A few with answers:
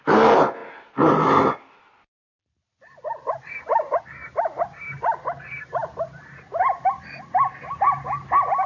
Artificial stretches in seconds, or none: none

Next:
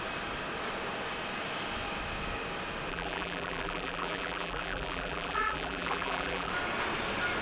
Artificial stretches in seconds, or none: 2.9-6.5 (vocoder, BigVGAN v2)

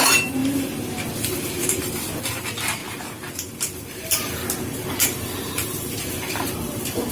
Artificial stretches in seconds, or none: 0.0-0.4 (vocoder, BigVGAN v2); 1.6-2.8; 3.8-4.4; 4.9-7.1

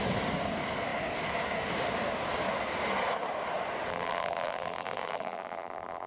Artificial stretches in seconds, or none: 3.9-6.1 (vocoder, BigVGAN v2)

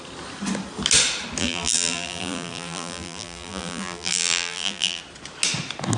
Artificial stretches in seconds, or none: 1.4-5.0 (vocoder, BigVGAN v2)

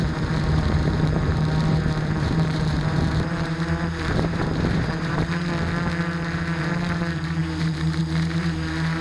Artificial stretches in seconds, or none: 0.0-5.2 (vocoder, BigVGAN v2); 6.0-9.0

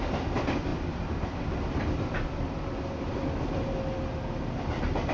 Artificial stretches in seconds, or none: 0.7-3.7 (vocoder, BigVGAN v2)